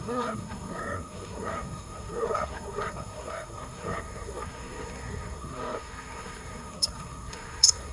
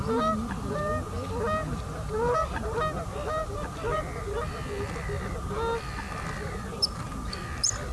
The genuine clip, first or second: second